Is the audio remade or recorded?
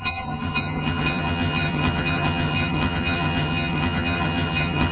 remade